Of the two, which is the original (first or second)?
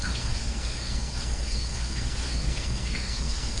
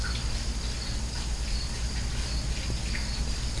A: second